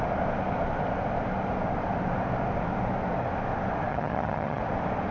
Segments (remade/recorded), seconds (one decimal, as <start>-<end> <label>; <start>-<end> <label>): 0.0-3.9 recorded; 3.9-4.6 remade; 4.6-5.1 recorded